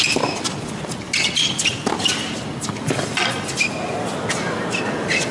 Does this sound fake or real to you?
real